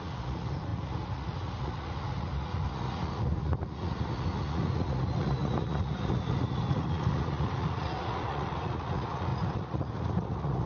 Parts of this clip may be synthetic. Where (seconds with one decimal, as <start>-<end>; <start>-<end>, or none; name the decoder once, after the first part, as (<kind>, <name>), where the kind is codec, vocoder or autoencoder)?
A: 0.0-10.7 (vocoder, Vocos)